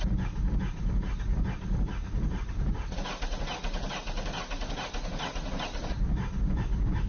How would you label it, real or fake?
real